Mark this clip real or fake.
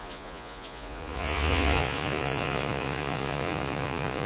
fake